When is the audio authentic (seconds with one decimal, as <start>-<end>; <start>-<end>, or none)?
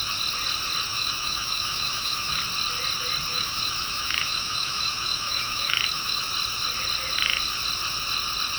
0.0-0.9; 2.4-3.3; 6.2-8.6